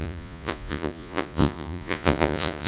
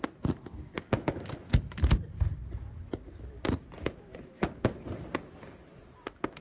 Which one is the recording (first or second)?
second